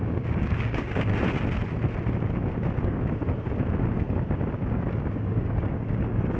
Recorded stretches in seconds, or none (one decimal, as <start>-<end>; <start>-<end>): 1.1-4.9